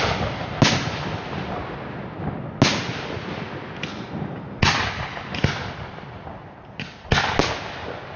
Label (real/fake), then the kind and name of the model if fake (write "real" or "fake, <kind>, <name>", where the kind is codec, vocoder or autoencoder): real